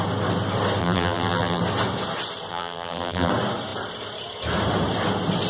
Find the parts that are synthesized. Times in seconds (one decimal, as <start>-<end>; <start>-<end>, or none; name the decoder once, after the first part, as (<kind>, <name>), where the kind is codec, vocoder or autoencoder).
0.8-1.6 (vocoder, BigVGAN v2); 2.5-3.3